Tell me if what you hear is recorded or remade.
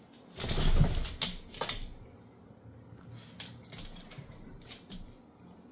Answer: recorded